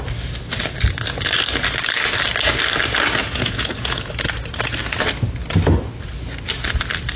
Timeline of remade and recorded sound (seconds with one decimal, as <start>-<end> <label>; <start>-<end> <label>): 0.0-3.2 recorded; 3.2-4.1 remade; 4.1-7.2 recorded